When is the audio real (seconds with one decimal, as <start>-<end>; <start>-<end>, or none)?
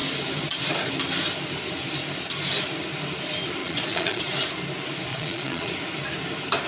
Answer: 0.0-3.6; 4.2-5.1; 5.7-6.7